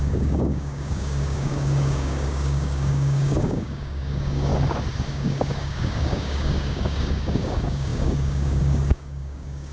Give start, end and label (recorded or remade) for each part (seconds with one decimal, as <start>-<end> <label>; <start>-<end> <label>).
0.0-4.5 remade; 4.5-5.1 recorded; 5.1-9.7 remade